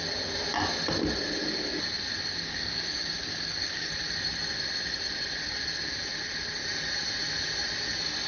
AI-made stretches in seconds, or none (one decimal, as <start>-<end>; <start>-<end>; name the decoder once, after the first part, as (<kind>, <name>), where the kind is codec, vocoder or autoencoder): 2.3-3.9 (codec, DAC)